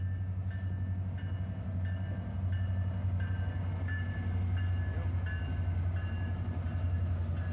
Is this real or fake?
real